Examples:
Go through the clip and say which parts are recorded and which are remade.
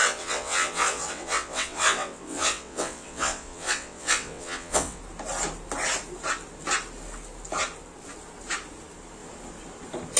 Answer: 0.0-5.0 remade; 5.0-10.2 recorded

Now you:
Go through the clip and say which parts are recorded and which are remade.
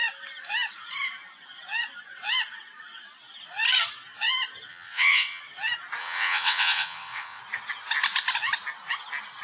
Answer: 0.0-4.7 recorded; 4.7-5.4 remade; 5.4-6.0 recorded; 6.0-7.4 remade; 7.4-9.4 recorded